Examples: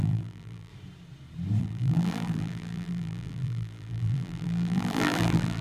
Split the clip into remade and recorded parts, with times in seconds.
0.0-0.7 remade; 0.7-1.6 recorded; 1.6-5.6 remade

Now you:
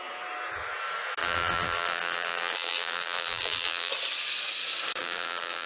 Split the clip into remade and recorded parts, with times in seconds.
0.0-1.2 recorded; 1.2-3.9 remade; 3.9-5.0 recorded; 5.0-5.7 remade